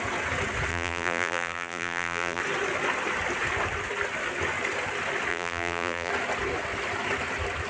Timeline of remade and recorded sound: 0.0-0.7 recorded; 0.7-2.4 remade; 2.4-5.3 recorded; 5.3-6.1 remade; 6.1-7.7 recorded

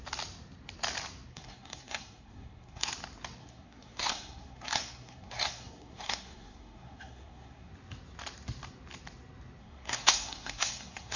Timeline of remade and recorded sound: 0.0-1.3 recorded; 1.3-2.9 remade; 2.9-3.4 recorded; 3.4-7.7 remade; 7.7-9.6 recorded; 9.6-11.2 remade

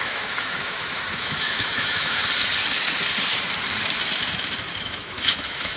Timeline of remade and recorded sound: 0.0-2.2 remade; 2.2-4.8 recorded; 4.8-5.8 remade

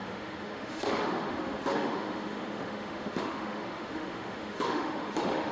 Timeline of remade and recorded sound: 0.0-5.5 remade